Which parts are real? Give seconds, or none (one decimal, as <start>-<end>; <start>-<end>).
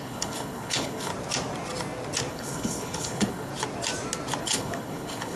1.1-2.3; 3.5-4.4